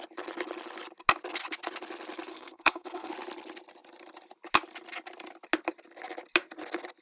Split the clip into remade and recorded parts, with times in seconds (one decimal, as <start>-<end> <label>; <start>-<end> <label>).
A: 0.0-2.3 recorded; 2.3-3.1 remade; 3.1-7.0 recorded